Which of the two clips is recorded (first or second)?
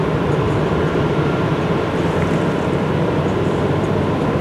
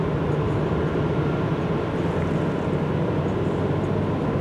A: second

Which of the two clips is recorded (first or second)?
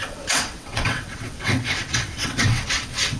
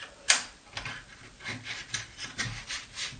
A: second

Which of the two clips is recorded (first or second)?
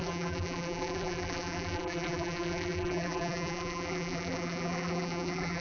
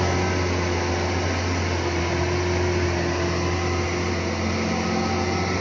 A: second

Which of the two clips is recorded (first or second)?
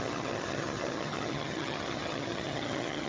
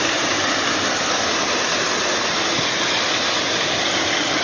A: second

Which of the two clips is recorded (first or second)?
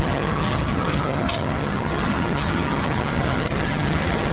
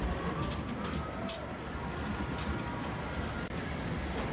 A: second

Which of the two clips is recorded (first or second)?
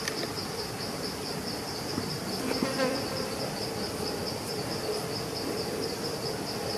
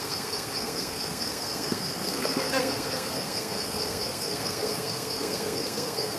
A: first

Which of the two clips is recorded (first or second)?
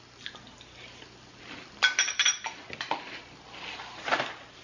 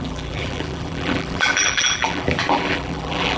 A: first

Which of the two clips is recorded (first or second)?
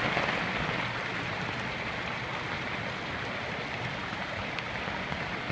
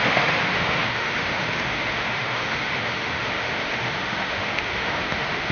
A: first